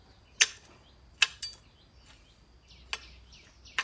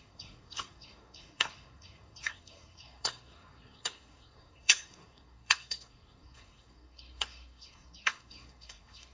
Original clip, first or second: first